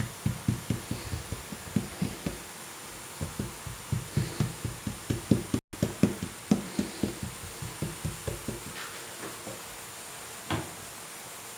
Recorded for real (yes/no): yes